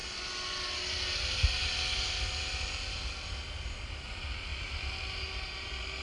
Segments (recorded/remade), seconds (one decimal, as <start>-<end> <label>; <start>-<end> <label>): 0.0-6.0 recorded